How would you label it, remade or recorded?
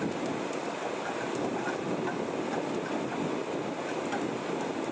recorded